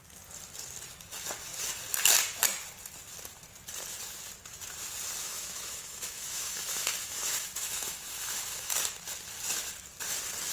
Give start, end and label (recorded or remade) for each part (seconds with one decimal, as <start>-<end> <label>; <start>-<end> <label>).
0.0-5.2 recorded; 5.2-8.8 remade; 8.8-10.5 recorded